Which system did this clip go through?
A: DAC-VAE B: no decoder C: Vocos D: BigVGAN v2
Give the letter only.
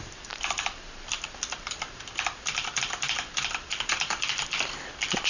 D